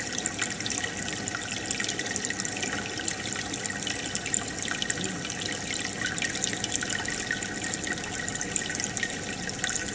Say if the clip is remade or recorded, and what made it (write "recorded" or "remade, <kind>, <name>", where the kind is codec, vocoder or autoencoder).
recorded